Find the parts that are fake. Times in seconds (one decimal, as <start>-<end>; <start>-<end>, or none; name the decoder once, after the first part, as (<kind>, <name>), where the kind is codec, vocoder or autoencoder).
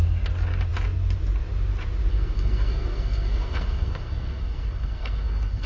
2.1-5.7 (codec, SNAC)